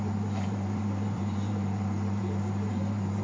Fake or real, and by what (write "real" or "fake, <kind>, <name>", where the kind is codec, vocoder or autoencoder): fake, vocoder, BigVGAN v2